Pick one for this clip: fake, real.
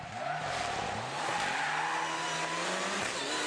real